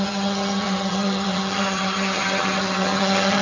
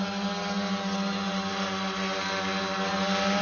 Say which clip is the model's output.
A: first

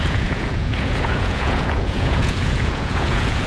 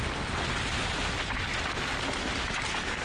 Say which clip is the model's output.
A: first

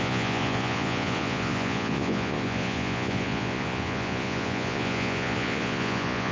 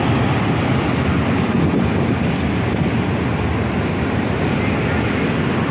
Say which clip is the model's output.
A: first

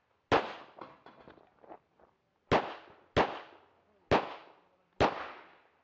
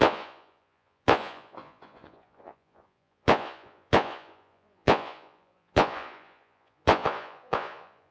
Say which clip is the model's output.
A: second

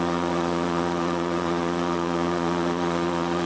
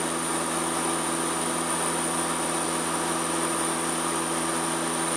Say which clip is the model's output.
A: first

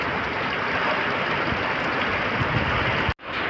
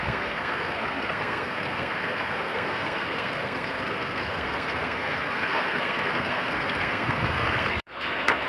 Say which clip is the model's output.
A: second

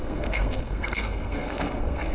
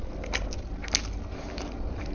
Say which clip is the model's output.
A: first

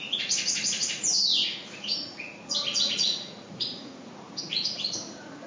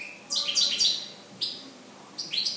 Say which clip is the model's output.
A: first